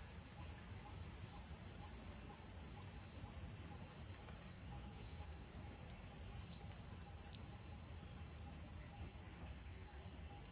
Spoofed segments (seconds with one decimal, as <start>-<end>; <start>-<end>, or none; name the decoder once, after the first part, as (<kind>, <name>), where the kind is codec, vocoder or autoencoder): 4.5-5.5 (codec, SNAC); 9.3-10.0